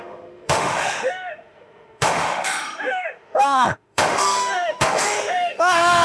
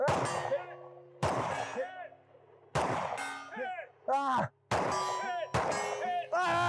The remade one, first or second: first